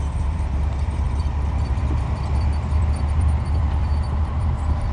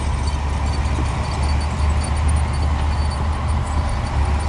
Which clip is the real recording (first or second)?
second